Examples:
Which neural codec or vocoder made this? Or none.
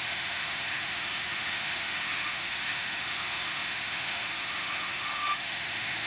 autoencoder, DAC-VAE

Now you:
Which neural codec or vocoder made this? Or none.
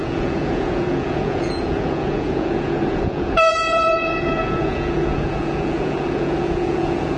vocoder, Vocos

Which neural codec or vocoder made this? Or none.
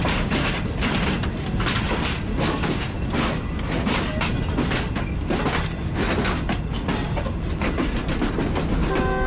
none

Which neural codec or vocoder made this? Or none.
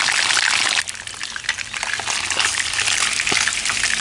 none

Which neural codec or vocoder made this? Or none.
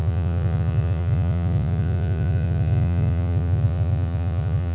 vocoder, Vocos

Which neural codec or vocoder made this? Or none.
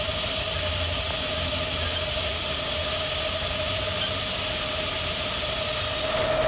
none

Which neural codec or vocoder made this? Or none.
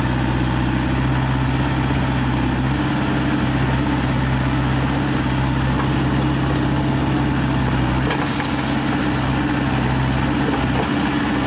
none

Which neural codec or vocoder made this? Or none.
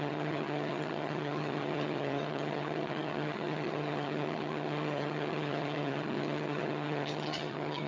vocoder, HiFi-GAN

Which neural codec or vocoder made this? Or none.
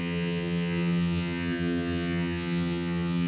vocoder, HiFi-GAN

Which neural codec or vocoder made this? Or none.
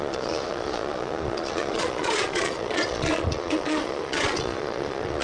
vocoder, Vocos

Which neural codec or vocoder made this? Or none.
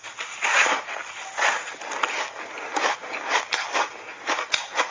none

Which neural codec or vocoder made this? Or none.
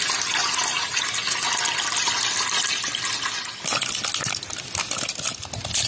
none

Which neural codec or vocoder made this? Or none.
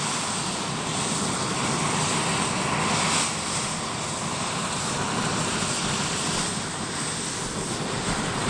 none